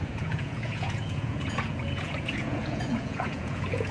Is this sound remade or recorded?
remade